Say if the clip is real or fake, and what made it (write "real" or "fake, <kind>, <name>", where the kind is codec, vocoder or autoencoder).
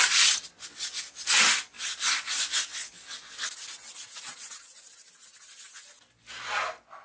real